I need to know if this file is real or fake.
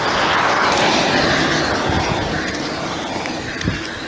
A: real